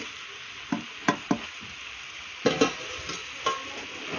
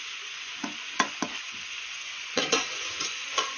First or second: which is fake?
second